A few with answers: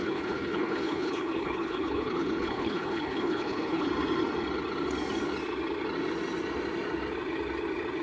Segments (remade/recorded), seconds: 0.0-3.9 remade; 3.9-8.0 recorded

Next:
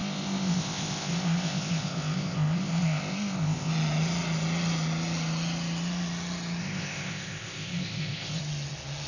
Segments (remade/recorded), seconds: 0.0-3.7 remade; 3.7-6.6 recorded; 6.6-8.4 remade; 8.4-9.1 recorded